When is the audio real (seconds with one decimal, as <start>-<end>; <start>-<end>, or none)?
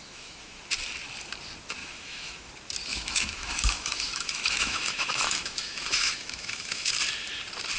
0.6-1.8; 2.5-2.9; 6.9-7.8